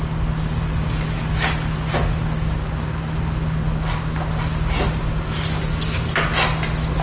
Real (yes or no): yes